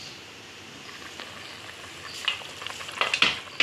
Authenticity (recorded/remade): recorded